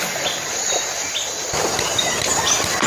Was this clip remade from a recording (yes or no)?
no